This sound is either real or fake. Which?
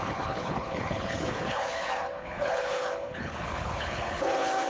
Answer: fake